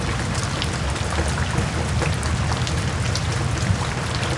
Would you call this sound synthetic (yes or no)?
no